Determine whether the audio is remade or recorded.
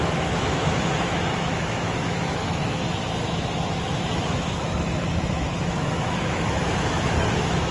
remade